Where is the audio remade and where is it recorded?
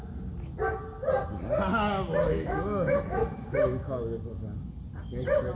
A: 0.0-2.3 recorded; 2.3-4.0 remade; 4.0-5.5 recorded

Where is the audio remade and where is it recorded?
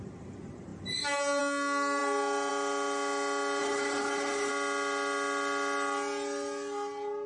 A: 0.0-3.6 recorded; 3.6-4.5 remade; 4.5-7.3 recorded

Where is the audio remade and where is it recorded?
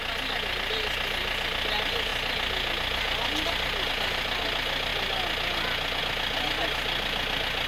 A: 0.0-7.7 recorded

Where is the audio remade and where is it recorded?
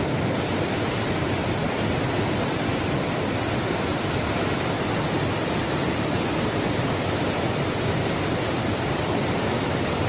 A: 0.0-10.1 recorded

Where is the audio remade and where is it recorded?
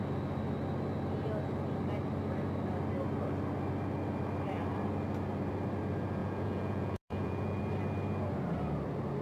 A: 0.0-6.2 recorded; 6.2-7.6 remade; 7.6-9.2 recorded